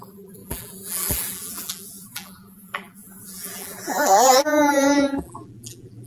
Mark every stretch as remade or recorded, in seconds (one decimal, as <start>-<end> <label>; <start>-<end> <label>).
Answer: 0.0-6.1 remade